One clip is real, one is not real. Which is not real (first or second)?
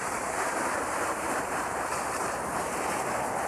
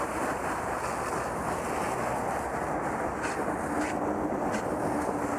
first